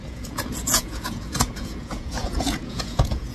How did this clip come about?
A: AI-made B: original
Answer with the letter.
A